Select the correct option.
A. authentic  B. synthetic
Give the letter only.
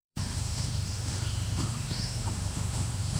B